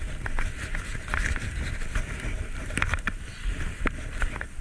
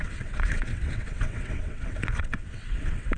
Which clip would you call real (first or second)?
first